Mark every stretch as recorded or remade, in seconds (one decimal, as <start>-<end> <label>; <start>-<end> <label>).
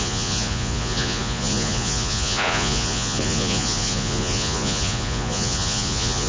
0.0-6.3 remade